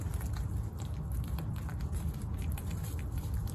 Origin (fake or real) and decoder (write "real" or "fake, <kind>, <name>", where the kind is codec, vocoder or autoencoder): real